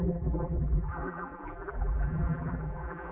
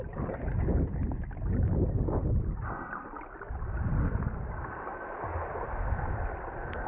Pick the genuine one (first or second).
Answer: second